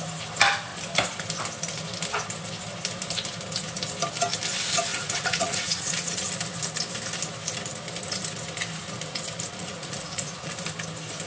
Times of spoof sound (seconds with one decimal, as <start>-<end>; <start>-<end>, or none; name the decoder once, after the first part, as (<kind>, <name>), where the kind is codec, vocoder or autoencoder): 4.9-6.3 (vocoder, Vocos); 9.6-10.5